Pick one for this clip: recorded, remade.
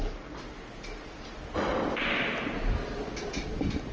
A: recorded